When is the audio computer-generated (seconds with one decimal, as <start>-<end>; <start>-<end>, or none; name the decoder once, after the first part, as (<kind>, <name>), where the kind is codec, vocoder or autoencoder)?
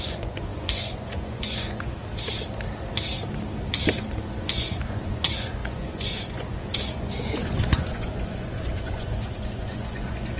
0.0-2.0 (vocoder, Vocos); 4.3-10.4